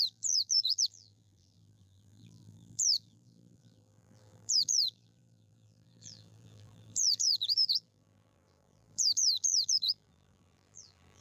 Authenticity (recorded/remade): remade